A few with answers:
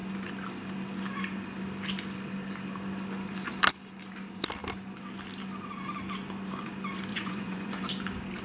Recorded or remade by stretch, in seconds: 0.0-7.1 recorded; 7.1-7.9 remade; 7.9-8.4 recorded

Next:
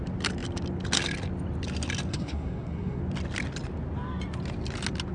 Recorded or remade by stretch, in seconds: 0.0-2.1 recorded; 2.1-3.0 remade; 3.0-5.1 recorded

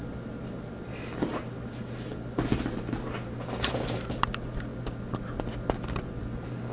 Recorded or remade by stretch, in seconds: 0.0-6.7 recorded

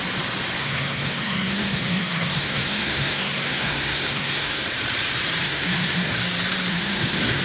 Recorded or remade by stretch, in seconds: 0.0-0.6 recorded; 0.6-4.6 remade; 4.6-5.4 recorded; 5.4-6.1 remade; 6.1-6.7 recorded; 6.7-7.4 remade

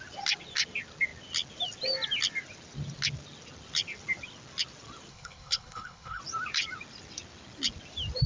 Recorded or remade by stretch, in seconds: 0.0-5.1 recorded; 5.1-6.2 remade; 6.2-8.3 recorded